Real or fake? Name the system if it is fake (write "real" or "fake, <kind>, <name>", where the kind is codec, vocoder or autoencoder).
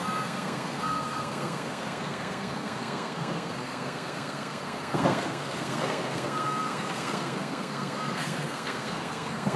fake, codec, SNAC